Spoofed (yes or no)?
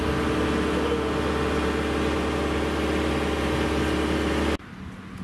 no